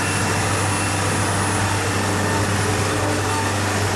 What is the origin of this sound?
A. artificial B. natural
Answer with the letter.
B